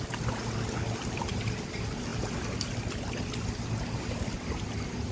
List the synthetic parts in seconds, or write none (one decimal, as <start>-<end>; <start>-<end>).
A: none

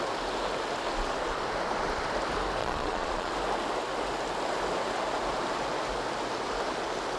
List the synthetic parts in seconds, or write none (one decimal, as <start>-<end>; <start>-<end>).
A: 2.6-3.3

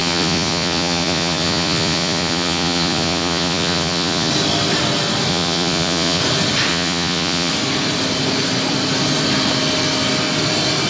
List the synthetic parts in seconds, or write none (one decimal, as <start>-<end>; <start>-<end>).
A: 0.0-4.3; 5.3-6.2; 6.7-7.5

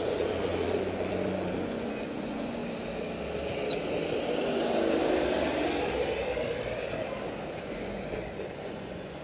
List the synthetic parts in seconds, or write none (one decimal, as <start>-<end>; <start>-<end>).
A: 0.0-2.6; 7.6-9.2